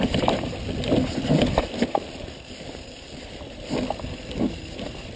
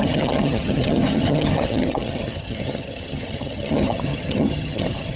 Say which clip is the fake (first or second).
second